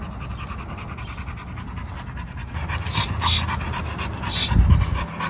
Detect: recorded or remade recorded